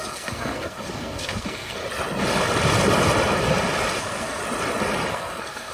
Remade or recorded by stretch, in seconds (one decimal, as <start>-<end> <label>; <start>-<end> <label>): 0.0-1.8 remade; 1.8-4.0 recorded; 4.0-4.4 remade; 4.4-5.1 recorded; 5.1-5.7 remade